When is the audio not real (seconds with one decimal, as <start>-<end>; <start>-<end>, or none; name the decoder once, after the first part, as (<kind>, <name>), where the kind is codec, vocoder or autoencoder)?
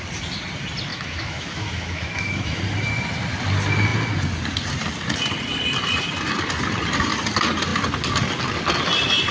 0.9-2.6 (autoencoder, DAC-VAE)